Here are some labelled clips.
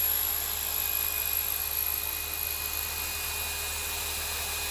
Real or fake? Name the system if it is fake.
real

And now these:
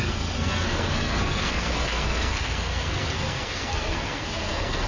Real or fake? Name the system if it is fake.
fake, codec, SNAC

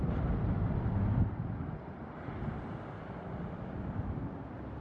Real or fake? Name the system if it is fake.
fake, vocoder, BigVGAN v2